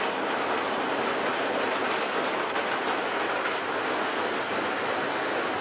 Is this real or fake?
real